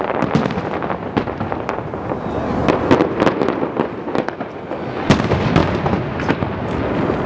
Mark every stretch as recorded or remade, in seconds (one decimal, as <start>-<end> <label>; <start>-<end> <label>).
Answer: 0.0-7.3 recorded